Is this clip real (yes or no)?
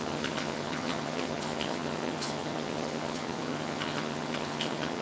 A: no